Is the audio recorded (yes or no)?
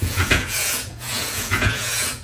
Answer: no